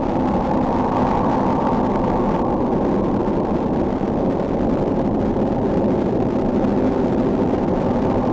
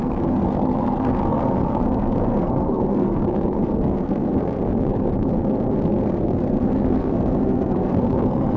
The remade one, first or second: second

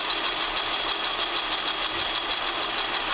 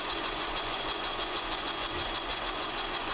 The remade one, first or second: second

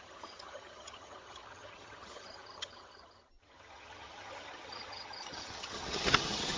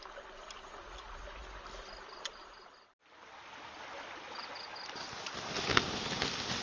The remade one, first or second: first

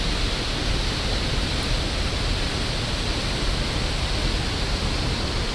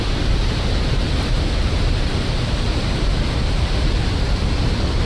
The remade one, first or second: second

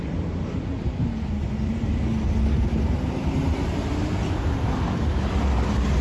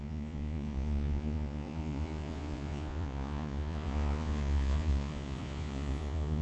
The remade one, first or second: second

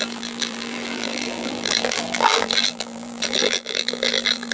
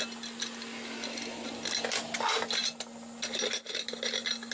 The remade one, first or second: first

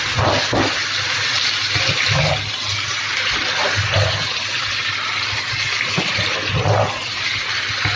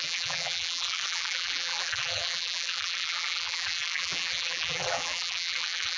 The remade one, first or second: second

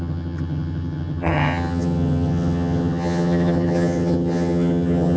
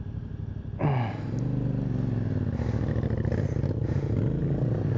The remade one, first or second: first